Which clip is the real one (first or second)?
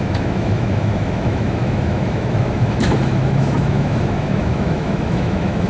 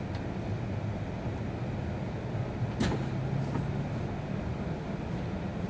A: second